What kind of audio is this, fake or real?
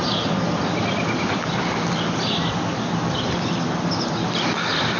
real